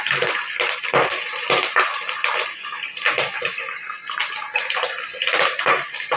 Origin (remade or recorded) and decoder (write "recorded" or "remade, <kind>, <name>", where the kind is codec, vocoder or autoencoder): recorded